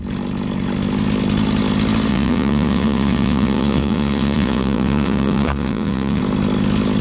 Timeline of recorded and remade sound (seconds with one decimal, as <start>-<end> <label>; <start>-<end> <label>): 0.0-2.1 recorded; 2.1-6.2 remade; 6.2-7.0 recorded